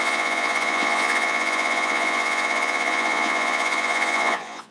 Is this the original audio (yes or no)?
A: no